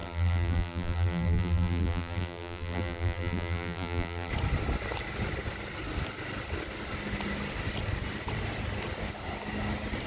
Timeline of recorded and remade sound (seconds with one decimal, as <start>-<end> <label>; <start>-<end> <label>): 0.0-4.3 remade; 4.3-10.1 recorded